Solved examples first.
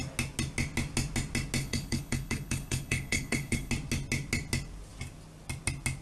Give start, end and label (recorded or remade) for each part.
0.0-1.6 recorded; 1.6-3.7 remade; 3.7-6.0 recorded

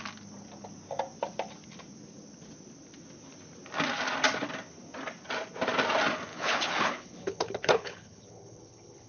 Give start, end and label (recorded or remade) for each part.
0.0-6.3 recorded; 6.3-9.1 remade

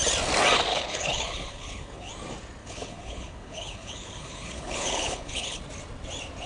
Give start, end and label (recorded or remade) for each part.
0.0-0.7 recorded; 0.7-2.1 remade; 2.1-2.6 recorded; 2.6-5.6 remade; 5.6-6.5 recorded